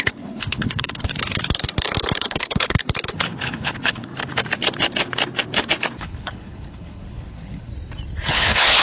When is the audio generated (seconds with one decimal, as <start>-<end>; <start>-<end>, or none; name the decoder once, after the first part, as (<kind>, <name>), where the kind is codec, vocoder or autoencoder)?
0.0-1.1 (codec, HILCodec); 2.2-2.8; 3.4-4.1; 6.0-7.7; 8.3-8.8